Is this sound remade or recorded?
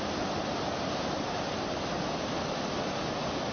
recorded